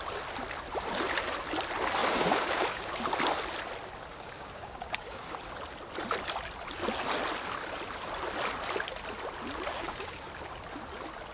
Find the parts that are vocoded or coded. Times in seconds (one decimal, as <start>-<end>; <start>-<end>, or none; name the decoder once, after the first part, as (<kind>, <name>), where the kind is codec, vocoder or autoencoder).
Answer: 2.0-2.9 (codec, DAC); 4.1-5.4; 9.7-10.3